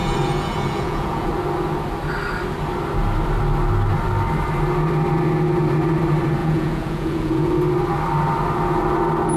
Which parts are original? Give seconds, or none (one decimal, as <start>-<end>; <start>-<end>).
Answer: 1.3-6.4; 7.5-9.4